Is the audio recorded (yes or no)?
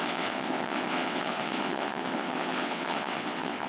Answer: no